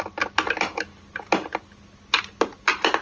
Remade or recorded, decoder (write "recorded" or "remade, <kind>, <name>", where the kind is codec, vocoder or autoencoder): recorded